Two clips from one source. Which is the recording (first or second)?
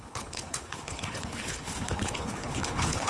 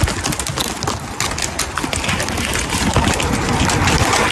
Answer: second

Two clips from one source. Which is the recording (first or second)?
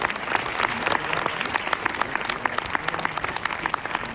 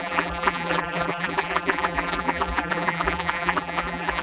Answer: first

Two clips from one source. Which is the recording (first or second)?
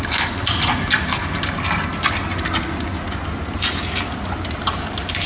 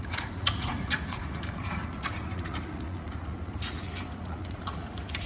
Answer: first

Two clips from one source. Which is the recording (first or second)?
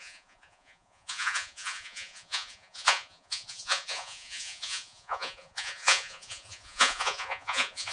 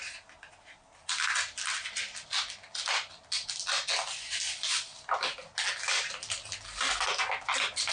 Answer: second